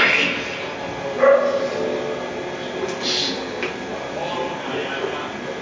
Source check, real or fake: real